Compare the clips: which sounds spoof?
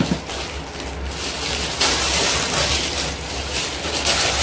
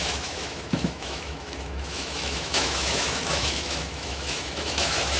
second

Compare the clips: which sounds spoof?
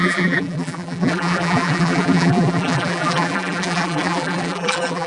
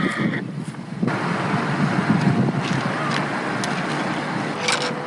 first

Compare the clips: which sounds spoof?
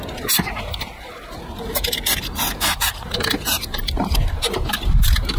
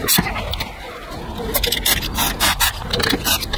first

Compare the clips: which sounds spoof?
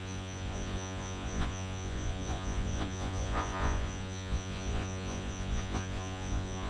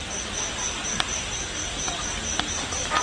first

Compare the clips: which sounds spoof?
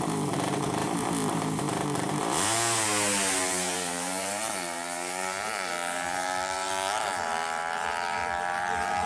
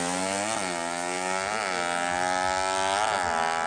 first